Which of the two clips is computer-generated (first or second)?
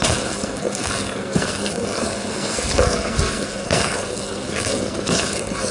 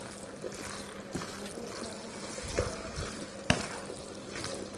first